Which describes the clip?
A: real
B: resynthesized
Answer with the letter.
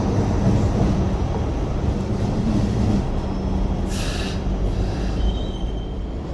A